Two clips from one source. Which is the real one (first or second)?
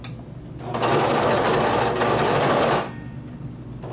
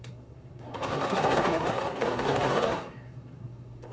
first